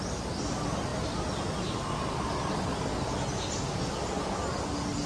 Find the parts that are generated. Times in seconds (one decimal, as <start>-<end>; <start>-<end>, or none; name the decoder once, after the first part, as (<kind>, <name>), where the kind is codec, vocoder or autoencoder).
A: none